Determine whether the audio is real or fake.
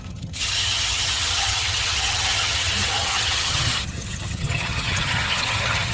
fake